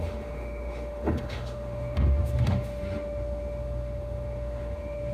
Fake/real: fake